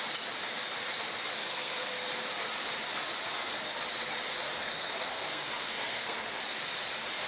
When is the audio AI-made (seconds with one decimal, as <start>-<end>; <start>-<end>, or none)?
1.4-1.9; 4.6-6.4